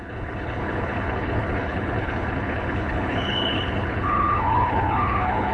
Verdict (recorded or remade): remade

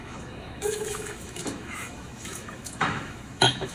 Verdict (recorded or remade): remade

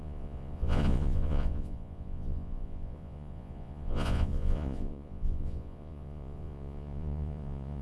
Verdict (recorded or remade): remade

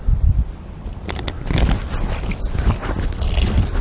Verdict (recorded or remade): recorded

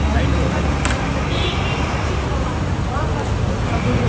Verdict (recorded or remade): recorded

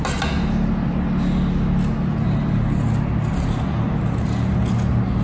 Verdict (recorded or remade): recorded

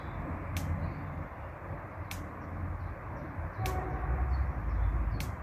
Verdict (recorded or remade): recorded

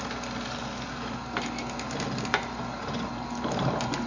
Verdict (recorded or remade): recorded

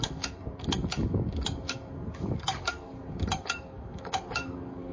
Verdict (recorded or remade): remade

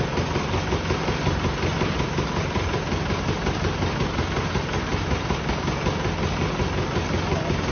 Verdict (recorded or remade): recorded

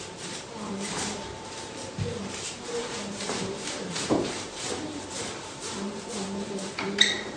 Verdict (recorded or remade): remade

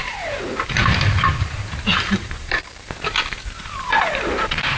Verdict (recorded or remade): remade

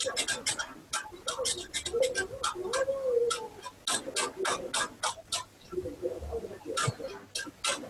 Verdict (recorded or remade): recorded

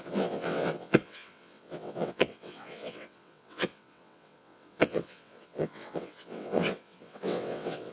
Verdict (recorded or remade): remade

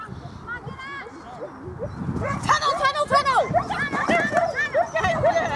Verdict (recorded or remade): recorded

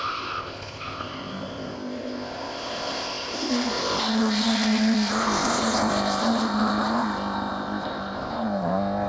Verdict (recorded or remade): remade